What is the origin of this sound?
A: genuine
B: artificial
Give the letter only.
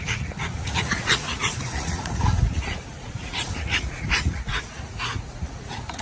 B